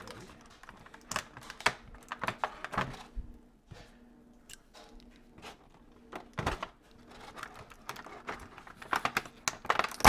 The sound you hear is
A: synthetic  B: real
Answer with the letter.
B